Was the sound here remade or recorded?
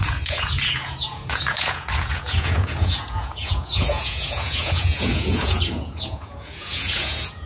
remade